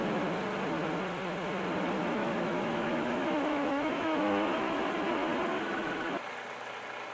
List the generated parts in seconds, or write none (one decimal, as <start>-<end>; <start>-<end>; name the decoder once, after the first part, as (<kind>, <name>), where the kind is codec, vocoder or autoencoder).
2.2-4.9 (autoencoder, DAC-VAE); 5.5-6.2